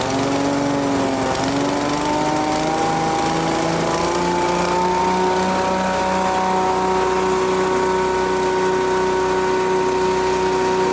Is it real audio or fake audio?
real